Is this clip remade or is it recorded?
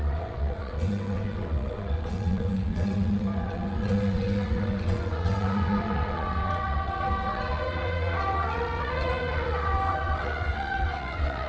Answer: remade